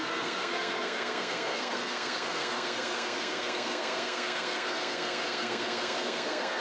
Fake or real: fake